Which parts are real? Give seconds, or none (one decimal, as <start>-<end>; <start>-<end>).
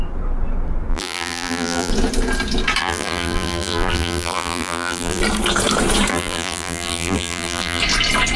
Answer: 0.0-0.9; 1.9-2.8; 5.2-6.1; 7.8-8.4